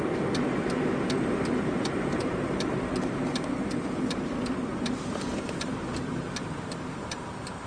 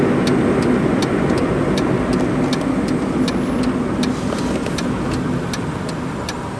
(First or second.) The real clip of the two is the second